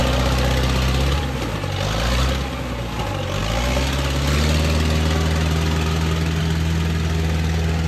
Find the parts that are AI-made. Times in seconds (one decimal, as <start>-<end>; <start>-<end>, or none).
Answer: 0.0-1.2